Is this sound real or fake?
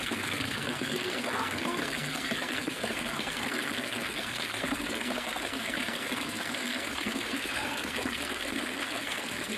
fake